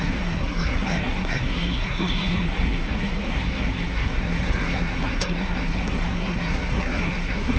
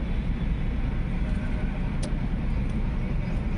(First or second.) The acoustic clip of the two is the second